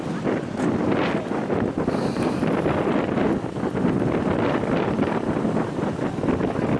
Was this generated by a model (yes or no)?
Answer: no